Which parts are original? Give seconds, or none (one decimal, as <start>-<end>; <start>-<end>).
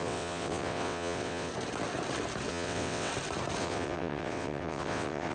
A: 1.5-2.5; 3.1-3.6